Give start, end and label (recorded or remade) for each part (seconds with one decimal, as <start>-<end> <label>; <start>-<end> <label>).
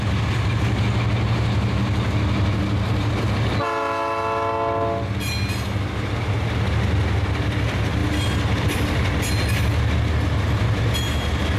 0.0-11.6 recorded